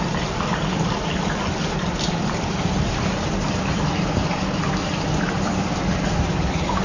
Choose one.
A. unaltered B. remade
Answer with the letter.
B